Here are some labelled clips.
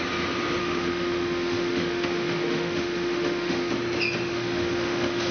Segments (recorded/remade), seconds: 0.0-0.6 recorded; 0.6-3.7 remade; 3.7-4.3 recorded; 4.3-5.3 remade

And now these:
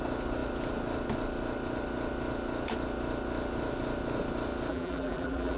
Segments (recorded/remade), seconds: 0.0-4.7 recorded; 4.7-5.6 remade

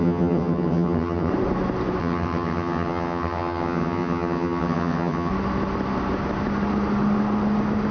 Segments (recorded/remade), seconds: 0.0-1.3 remade; 1.3-2.0 recorded; 2.0-5.3 remade; 5.3-7.9 recorded

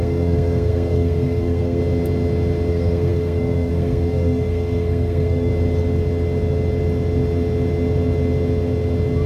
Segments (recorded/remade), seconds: 0.0-1.8 remade; 1.8-2.7 recorded; 2.7-5.5 remade; 5.5-9.3 recorded

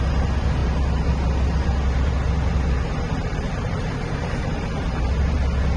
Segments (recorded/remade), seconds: 0.0-3.3 recorded; 3.3-5.0 remade; 5.0-5.8 recorded

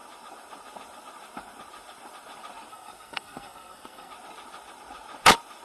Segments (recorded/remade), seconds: 0.0-2.7 recorded; 2.7-4.1 remade; 4.1-5.6 recorded

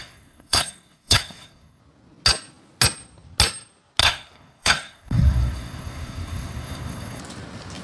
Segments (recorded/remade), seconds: 0.0-1.8 remade; 1.8-4.0 recorded; 4.0-7.2 remade; 7.2-7.8 recorded